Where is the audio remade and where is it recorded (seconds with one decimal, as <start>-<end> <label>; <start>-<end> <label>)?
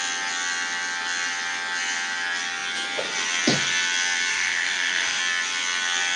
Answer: 0.0-4.3 recorded; 4.3-5.2 remade; 5.2-6.2 recorded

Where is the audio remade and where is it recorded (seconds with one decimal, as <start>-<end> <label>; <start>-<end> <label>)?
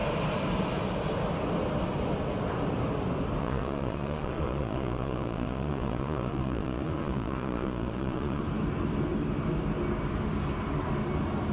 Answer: 0.0-3.4 recorded; 3.4-8.4 remade; 8.4-11.5 recorded